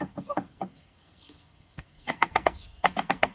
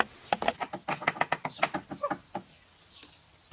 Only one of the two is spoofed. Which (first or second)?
first